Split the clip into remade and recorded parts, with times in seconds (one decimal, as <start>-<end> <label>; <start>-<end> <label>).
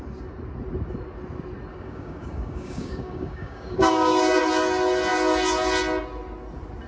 0.0-1.7 recorded; 1.7-4.4 remade; 4.4-6.9 recorded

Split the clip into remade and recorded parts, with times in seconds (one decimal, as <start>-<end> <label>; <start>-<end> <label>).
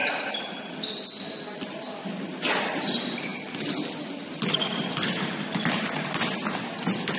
0.0-7.2 recorded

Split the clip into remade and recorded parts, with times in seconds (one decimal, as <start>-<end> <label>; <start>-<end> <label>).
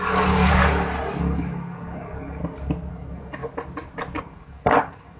0.0-0.6 remade; 0.6-1.2 recorded; 1.2-2.4 remade; 2.4-2.9 recorded; 2.9-3.4 remade; 3.4-4.2 recorded; 4.2-5.2 remade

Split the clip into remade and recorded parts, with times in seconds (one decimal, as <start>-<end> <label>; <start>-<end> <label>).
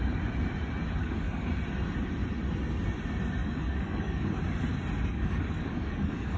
0.0-1.0 recorded; 1.0-1.5 remade; 1.5-3.4 recorded; 3.4-4.4 remade; 4.4-5.1 recorded; 5.1-6.4 remade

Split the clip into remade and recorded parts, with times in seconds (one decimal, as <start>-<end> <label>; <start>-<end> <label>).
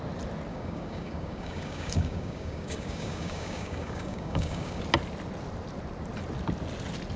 0.0-0.5 recorded; 0.5-4.8 remade; 4.8-7.2 recorded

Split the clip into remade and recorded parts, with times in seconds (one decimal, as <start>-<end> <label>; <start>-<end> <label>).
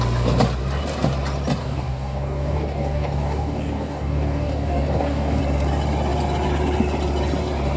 0.0-1.6 recorded; 1.6-5.4 remade; 5.4-7.8 recorded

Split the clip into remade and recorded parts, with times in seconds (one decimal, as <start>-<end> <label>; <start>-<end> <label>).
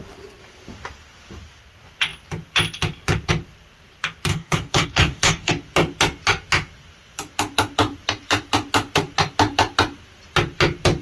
0.0-4.3 recorded; 4.3-5.5 remade; 5.5-11.0 recorded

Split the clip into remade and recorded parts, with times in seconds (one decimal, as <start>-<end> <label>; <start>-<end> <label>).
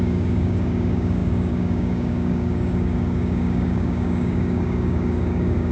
0.0-5.7 remade